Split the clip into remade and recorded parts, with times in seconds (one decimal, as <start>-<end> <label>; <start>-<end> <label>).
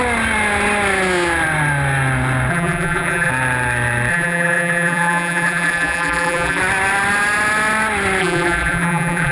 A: 0.0-2.5 recorded; 2.5-3.3 remade; 3.3-4.1 recorded; 4.1-6.6 remade; 6.6-8.2 recorded; 8.2-9.3 remade